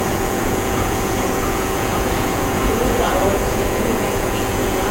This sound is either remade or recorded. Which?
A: remade